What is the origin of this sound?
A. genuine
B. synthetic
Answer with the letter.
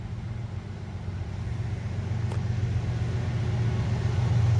A